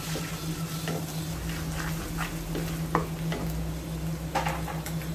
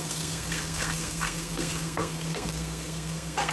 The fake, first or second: second